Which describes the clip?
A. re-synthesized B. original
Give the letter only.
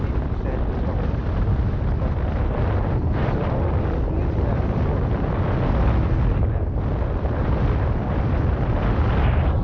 B